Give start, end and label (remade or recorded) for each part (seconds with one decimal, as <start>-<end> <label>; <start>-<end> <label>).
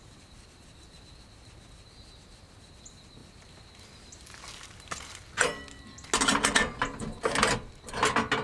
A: 0.0-8.4 recorded